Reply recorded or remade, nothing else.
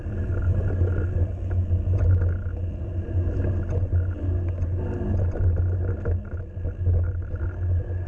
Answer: recorded